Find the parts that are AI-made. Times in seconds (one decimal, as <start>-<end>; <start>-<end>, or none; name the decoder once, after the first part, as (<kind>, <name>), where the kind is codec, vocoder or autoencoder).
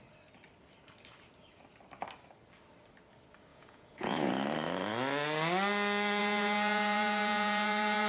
3.5-4.3 (vocoder, Vocos); 6.2-8.1